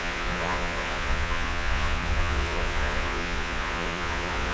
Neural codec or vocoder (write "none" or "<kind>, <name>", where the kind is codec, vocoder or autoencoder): vocoder, Vocos